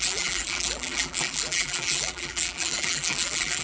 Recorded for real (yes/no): no